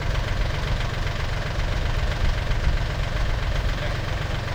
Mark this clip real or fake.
real